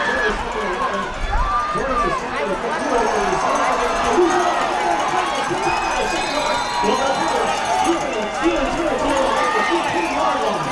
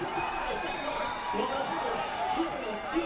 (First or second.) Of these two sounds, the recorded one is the first